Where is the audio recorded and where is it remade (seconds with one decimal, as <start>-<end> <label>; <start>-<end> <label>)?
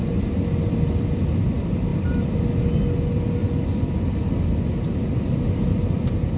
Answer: 0.0-6.4 recorded